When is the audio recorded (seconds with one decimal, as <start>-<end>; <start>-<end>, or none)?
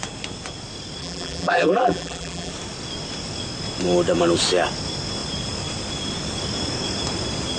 0.0-1.0; 2.5-7.6